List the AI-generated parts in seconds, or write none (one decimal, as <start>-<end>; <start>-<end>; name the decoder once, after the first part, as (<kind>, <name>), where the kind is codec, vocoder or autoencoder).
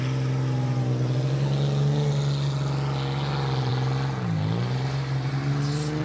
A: none